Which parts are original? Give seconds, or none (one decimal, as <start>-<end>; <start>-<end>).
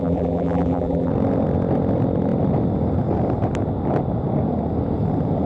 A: 1.1-5.5